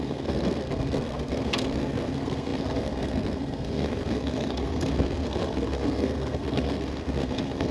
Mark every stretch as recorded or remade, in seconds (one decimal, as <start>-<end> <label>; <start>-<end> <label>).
0.0-7.7 remade